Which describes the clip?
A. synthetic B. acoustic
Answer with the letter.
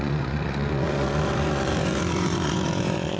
A